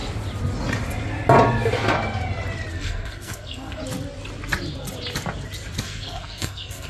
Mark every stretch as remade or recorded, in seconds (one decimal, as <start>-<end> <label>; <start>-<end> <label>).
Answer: 0.0-2.7 recorded; 2.7-3.8 remade; 3.8-5.8 recorded; 5.8-6.9 remade